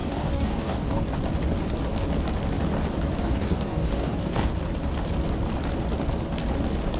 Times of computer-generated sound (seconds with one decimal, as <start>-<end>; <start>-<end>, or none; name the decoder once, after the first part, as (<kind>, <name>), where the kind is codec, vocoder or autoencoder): 0.0-1.0 (codec, DAC); 3.2-4.5